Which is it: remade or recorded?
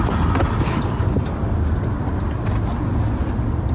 recorded